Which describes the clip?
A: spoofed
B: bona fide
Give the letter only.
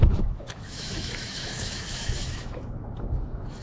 A